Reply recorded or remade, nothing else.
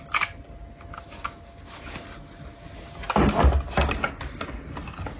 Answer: recorded